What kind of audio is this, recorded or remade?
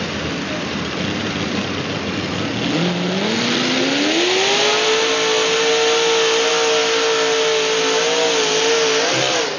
recorded